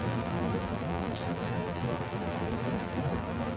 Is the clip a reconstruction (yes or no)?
yes